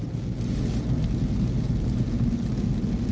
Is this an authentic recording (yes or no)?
yes